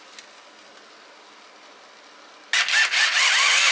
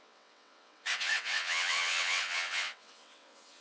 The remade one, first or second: second